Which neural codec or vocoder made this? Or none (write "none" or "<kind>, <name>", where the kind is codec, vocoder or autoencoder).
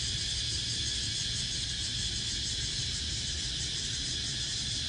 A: none